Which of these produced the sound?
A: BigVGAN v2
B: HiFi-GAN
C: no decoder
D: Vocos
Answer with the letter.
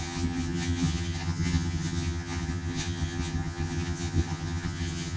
B